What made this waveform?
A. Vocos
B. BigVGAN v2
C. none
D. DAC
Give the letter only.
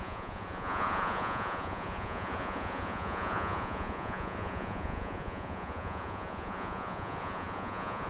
A